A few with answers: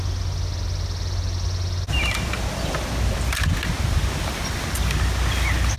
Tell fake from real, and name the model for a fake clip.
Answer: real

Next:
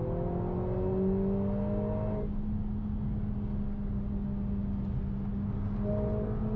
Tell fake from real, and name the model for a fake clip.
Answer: real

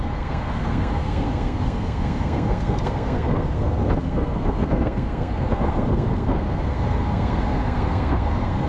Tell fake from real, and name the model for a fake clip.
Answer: fake, codec, SNAC